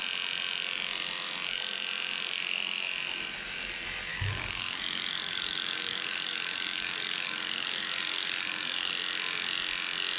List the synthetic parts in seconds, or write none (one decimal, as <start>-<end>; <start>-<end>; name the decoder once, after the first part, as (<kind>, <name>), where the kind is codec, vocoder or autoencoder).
4.1-8.9 (codec, DAC)